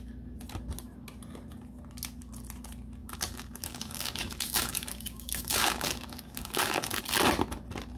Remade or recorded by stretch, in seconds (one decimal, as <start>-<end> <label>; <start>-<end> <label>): 0.0-3.0 recorded; 3.0-7.0 remade; 7.0-8.0 recorded